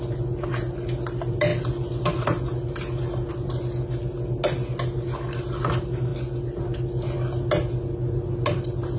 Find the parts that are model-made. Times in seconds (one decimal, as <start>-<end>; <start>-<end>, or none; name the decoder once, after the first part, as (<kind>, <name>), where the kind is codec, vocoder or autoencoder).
none